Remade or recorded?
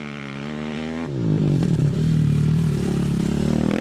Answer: remade